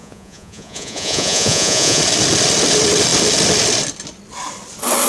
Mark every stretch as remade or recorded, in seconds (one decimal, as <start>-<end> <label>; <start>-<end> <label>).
0.0-2.0 remade; 2.0-5.1 recorded